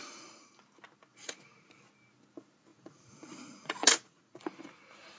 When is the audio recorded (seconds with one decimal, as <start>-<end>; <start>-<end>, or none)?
0.6-1.1; 1.7-2.7; 4.6-5.2